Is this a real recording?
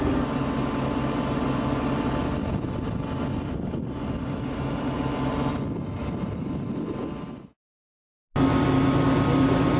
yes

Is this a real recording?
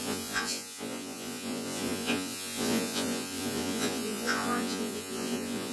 no